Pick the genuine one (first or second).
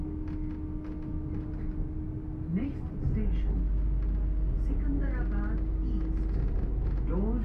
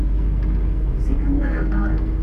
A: first